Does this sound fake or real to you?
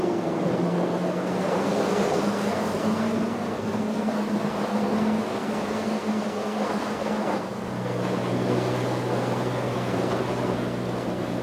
fake